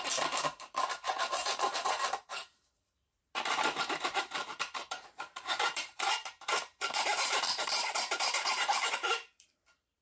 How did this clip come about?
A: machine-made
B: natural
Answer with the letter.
A